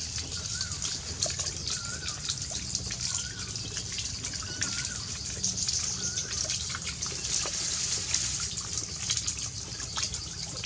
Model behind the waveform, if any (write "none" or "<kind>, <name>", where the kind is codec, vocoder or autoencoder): none